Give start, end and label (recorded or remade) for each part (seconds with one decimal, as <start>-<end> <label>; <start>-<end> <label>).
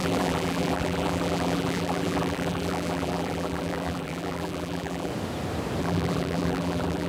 0.0-5.1 remade; 5.1-5.8 recorded; 5.8-7.1 remade